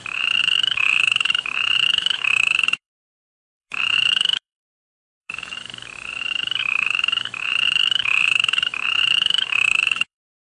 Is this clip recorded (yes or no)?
no